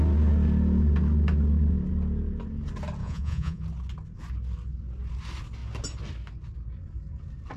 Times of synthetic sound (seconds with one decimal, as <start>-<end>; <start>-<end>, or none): 3.0-3.6